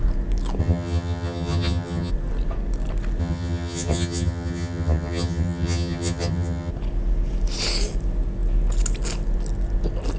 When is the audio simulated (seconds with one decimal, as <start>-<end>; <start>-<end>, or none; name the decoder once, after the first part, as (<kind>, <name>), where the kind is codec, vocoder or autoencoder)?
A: 0.6-2.1 (vocoder, HiFi-GAN); 3.2-6.7